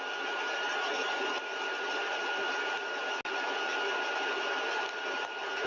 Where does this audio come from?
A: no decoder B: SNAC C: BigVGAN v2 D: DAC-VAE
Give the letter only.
A